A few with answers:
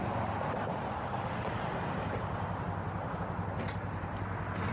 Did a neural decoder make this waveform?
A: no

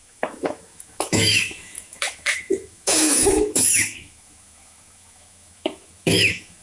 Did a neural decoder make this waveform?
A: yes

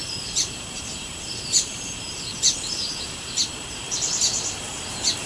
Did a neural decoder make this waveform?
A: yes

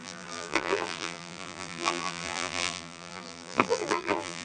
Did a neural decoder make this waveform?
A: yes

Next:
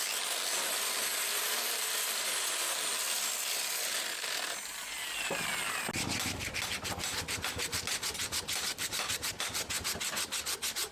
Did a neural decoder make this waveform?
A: no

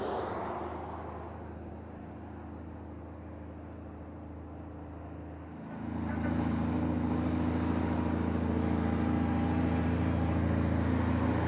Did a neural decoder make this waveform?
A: no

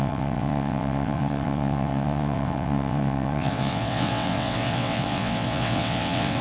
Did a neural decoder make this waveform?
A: yes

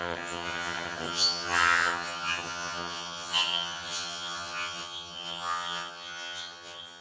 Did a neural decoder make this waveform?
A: yes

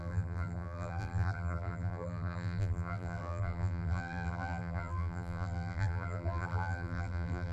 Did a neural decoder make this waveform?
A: yes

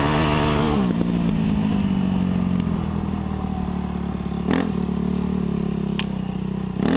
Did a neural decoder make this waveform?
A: no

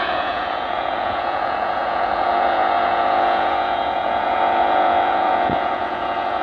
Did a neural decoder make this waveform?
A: yes